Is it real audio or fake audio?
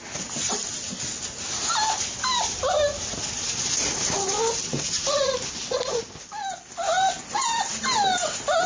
real